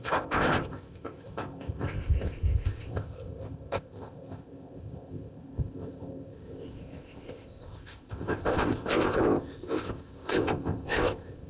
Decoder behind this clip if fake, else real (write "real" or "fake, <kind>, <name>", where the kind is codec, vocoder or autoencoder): fake, codec, ZipCodec